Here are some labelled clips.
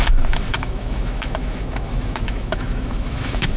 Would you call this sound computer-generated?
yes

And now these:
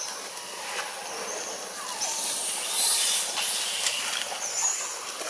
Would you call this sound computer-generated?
no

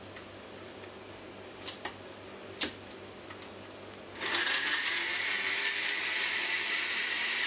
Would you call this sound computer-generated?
no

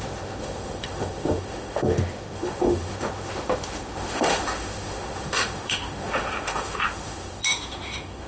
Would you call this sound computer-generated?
yes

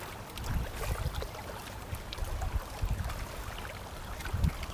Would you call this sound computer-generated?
no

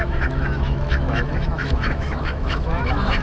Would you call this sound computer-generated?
yes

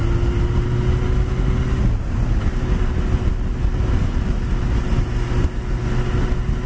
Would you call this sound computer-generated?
no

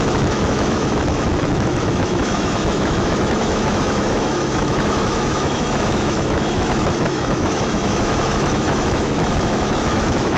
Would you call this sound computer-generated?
yes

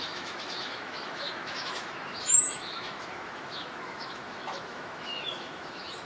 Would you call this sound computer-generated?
yes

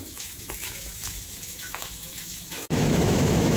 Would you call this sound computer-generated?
yes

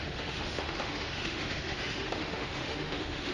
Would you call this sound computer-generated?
yes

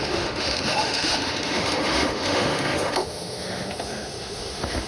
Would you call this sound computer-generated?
yes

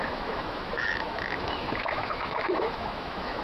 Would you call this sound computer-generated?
yes